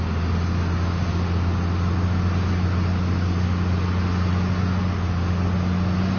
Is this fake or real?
real